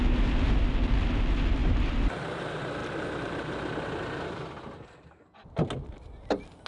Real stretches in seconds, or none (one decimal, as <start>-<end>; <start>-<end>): 0.0-1.6; 2.2-2.8; 3.8-6.7